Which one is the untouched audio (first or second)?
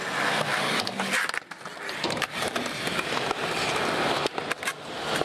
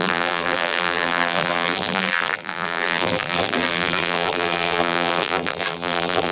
first